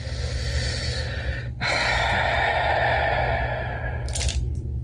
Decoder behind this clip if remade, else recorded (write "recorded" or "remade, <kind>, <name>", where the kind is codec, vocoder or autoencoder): recorded